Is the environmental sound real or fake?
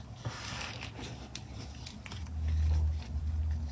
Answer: real